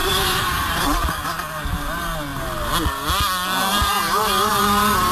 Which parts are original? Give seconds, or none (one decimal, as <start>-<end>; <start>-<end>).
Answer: 0.8-3.7; 4.5-5.1